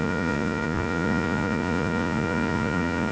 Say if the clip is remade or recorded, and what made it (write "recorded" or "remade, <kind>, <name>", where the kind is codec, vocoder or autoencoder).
remade, vocoder, Vocos